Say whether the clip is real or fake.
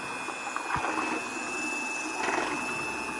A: real